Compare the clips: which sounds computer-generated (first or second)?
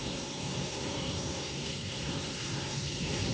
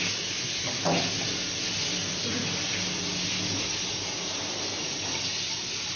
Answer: first